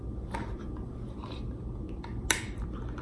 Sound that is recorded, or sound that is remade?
recorded